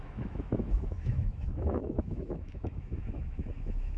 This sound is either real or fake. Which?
fake